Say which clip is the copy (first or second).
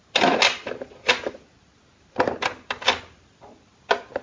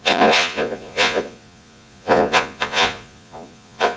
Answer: second